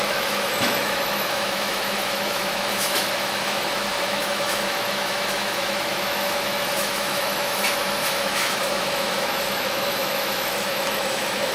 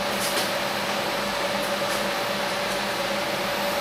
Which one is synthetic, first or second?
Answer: first